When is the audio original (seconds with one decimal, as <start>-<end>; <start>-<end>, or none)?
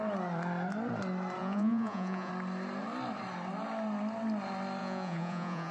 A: 0.0-1.4; 2.3-4.8